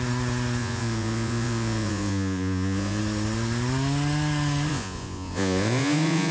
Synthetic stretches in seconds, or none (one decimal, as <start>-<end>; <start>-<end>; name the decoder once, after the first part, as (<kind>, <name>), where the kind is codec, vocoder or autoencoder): 0.6-3.0 (vocoder, Vocos); 4.7-6.3